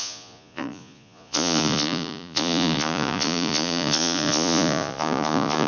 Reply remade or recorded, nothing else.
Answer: remade